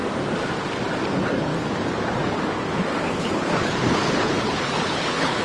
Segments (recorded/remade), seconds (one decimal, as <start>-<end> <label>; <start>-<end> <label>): 0.0-1.1 recorded; 1.1-1.5 remade; 1.5-3.1 recorded; 3.1-5.4 remade